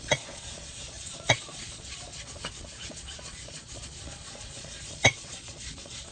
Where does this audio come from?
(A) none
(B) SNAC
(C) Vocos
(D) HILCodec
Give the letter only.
C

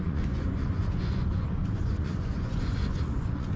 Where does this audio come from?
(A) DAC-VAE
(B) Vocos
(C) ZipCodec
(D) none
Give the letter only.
B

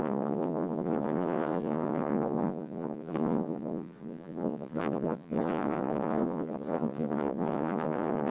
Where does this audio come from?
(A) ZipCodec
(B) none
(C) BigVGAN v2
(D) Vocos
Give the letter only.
D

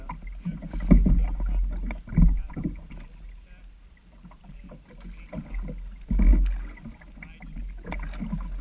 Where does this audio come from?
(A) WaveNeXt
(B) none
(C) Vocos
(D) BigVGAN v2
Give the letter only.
B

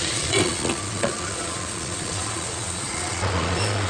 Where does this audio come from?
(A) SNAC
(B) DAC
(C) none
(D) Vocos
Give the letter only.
D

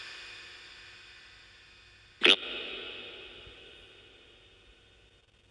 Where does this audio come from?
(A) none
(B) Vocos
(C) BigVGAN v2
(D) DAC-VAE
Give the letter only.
A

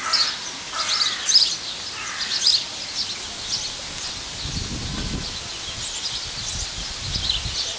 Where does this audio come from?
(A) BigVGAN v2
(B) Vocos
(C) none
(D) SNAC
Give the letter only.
C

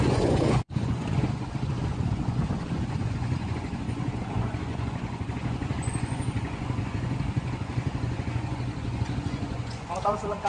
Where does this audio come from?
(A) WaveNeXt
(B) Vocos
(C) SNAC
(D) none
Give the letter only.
B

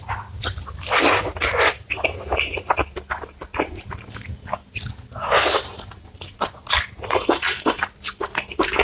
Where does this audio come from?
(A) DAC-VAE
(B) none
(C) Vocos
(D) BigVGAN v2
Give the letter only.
B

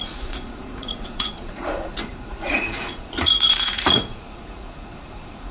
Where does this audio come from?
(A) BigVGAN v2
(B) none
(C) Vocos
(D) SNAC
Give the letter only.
C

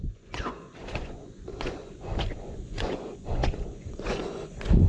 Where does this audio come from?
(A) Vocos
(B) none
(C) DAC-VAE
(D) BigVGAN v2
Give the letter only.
A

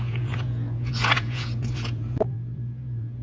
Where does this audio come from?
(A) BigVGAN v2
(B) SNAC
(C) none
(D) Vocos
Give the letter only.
D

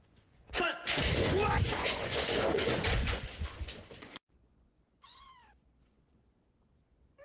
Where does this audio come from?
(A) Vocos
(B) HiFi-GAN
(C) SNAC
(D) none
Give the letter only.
A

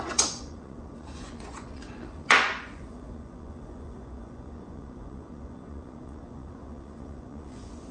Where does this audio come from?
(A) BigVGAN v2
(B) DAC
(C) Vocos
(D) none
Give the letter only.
C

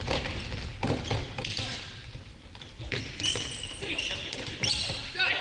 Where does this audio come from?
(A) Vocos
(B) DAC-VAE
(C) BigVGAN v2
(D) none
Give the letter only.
D